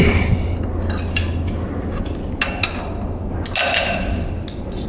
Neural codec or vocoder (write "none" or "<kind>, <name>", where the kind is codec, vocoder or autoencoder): none